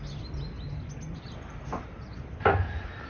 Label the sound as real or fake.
real